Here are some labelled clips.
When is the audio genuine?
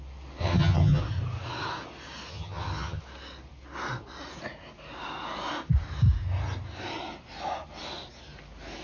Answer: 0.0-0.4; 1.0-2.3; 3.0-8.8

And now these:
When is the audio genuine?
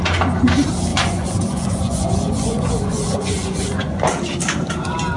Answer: 0.0-0.9; 4.0-5.2